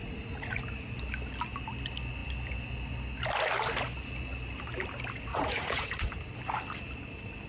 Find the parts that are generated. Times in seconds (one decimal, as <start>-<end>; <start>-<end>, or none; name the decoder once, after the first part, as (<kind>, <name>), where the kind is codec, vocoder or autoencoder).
0.0-0.6 (vocoder, Vocos); 5.3-6.1